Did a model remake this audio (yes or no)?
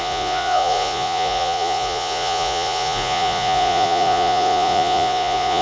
yes